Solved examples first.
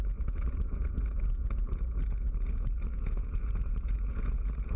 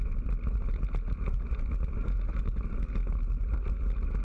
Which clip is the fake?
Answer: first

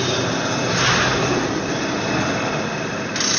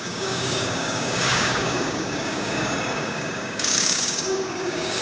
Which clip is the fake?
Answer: second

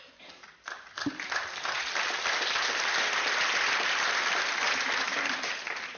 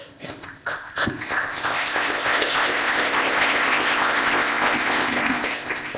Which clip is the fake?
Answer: second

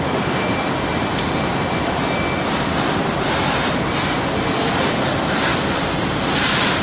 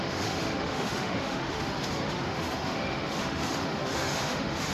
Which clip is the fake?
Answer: second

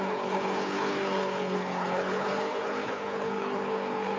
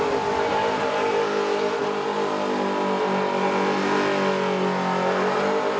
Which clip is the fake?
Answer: first